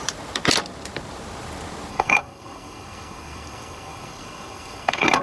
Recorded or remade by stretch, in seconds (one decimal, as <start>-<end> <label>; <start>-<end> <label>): 0.0-1.9 recorded; 1.9-5.2 remade